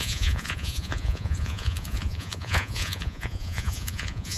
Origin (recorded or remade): remade